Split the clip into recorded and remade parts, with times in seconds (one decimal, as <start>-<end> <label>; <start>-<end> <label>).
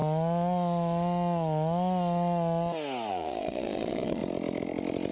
0.0-3.1 recorded; 3.1-4.2 remade; 4.2-5.1 recorded